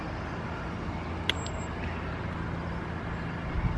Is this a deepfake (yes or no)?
no